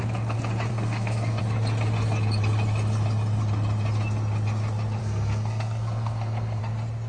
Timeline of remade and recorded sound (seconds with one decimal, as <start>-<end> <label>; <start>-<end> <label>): 0.0-0.7 recorded; 0.7-1.4 remade; 1.4-5.0 recorded; 5.0-6.6 remade; 6.6-7.1 recorded